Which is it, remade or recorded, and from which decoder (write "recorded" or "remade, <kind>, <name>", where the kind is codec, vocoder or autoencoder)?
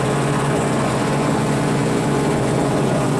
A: remade, vocoder, Vocos